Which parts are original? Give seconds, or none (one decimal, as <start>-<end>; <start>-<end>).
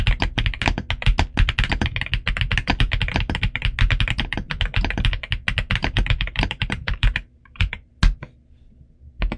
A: 0.0-5.8; 7.9-9.4